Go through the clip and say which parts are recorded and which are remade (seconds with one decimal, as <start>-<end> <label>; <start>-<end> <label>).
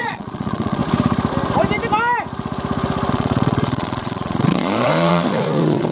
0.0-0.8 remade; 0.8-3.1 recorded; 3.1-5.9 remade